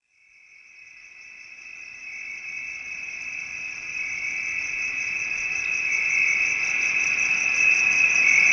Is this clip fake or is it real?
real